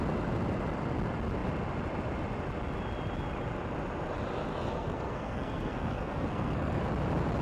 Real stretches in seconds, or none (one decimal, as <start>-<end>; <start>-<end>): 0.0-4.5; 6.8-7.4